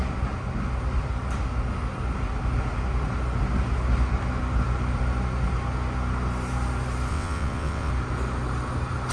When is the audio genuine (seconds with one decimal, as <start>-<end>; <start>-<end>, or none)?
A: 0.0-7.1; 7.9-9.1